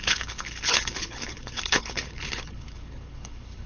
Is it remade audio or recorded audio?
remade